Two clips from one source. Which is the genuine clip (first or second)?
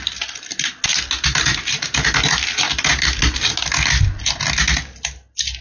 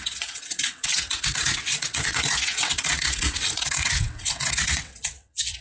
first